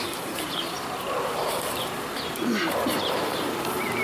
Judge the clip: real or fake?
fake